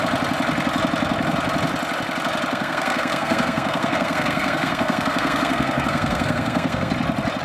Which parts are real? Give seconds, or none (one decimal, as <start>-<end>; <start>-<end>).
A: 0.0-2.5; 6.9-7.4